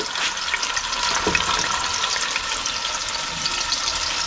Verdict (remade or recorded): recorded